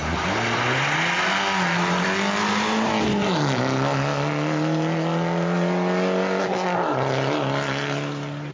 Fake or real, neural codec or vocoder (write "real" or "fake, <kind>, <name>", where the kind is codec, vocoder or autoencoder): real